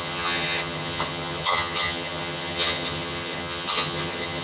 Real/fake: fake